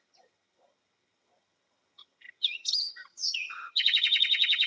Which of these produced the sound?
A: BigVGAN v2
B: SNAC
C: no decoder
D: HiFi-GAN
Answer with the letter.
D